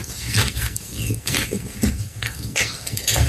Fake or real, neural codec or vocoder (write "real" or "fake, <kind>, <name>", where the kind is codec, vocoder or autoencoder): fake, codec, SNAC